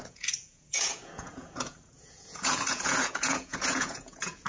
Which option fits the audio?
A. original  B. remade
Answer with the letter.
B